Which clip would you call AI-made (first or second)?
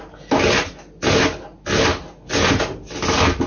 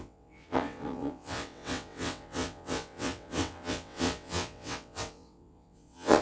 second